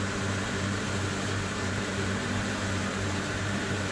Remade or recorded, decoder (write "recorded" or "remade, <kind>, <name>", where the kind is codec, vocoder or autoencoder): remade, vocoder, BigVGAN v2